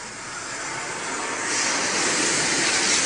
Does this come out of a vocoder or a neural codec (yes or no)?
no